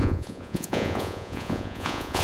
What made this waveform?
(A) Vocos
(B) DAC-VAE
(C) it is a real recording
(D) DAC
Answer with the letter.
A